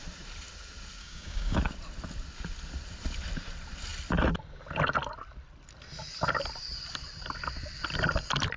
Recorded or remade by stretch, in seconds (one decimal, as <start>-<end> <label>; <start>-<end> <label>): 0.0-1.0 recorded; 1.0-1.6 remade; 1.6-8.6 recorded